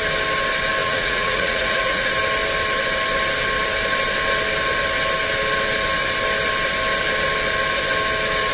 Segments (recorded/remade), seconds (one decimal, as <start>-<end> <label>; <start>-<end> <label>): 0.0-0.8 recorded; 0.8-2.1 remade; 2.1-8.5 recorded